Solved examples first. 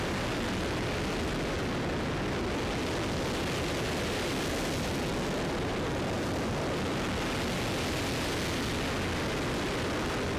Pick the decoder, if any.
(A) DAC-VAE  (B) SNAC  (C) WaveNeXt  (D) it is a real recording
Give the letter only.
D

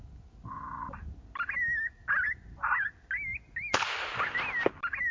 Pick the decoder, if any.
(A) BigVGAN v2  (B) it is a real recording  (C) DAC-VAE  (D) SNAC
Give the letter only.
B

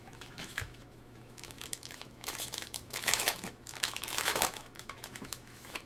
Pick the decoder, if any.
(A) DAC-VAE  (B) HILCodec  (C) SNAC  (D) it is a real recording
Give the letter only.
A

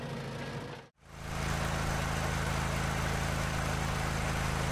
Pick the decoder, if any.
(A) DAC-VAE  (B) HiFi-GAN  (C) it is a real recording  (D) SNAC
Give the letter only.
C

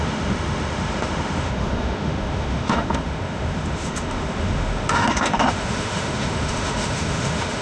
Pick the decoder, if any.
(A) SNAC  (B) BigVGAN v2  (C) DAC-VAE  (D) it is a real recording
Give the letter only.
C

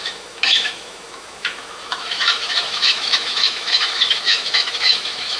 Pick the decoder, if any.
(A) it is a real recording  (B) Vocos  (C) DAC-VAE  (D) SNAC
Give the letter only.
C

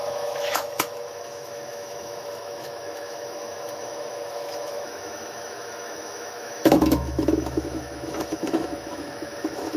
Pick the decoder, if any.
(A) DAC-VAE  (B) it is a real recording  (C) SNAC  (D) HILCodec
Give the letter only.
A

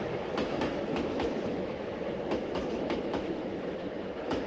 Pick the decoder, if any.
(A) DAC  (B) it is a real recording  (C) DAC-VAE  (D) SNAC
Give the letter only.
C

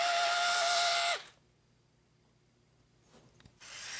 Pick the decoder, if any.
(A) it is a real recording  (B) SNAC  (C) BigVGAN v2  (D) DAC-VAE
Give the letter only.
A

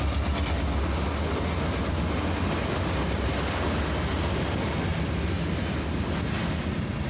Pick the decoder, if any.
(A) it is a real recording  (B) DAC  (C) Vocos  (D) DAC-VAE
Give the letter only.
A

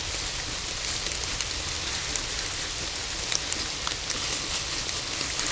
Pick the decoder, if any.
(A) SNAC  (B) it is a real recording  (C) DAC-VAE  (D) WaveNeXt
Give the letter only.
B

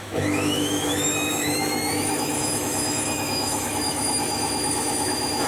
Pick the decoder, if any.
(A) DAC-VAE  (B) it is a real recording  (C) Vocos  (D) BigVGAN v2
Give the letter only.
A